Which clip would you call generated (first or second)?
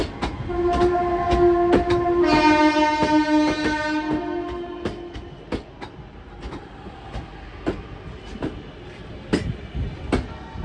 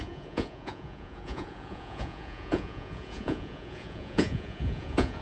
second